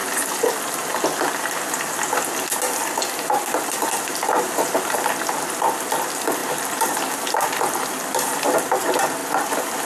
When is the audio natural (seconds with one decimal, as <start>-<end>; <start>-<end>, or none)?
0.0-9.9